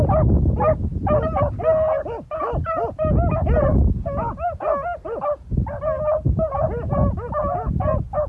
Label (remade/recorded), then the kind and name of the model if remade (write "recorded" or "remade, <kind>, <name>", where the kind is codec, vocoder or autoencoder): recorded